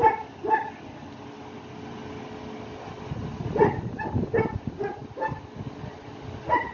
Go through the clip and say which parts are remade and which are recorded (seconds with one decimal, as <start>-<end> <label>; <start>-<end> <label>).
0.0-6.7 recorded